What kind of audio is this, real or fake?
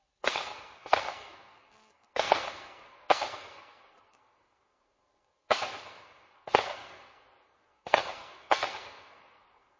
fake